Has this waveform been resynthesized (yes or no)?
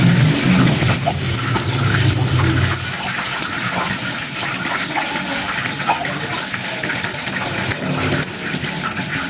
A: no